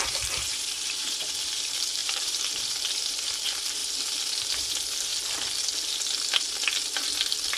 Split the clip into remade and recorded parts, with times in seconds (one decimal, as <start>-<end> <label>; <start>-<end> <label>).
0.0-3.8 remade; 3.8-4.3 recorded; 4.3-5.1 remade; 5.1-7.6 recorded